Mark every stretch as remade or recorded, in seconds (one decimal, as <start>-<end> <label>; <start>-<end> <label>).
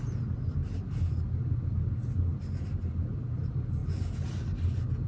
0.0-5.1 recorded